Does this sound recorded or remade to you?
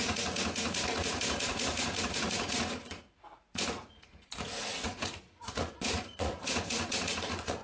remade